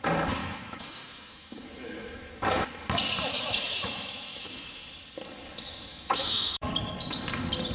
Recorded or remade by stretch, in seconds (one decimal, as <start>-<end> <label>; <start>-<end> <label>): 0.0-0.4 recorded; 0.4-2.3 remade; 2.3-3.3 recorded; 3.3-4.9 remade; 4.9-5.9 recorded; 5.9-6.7 remade; 6.7-7.7 recorded